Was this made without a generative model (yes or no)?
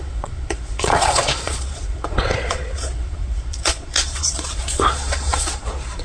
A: no